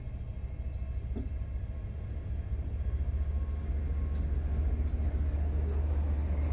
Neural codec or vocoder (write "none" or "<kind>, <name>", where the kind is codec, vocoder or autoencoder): none